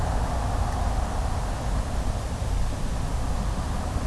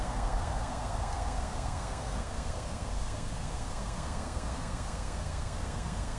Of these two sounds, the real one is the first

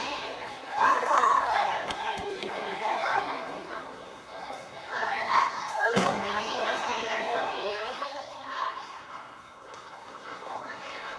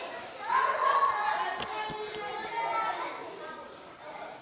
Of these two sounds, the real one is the second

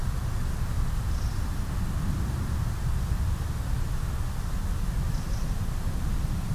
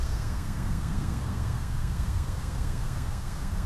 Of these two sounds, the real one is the first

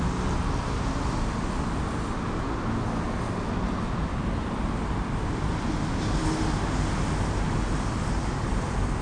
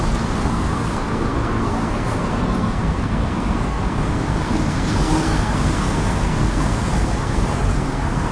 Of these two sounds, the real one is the first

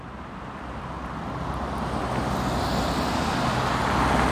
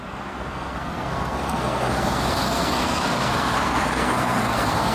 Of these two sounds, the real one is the first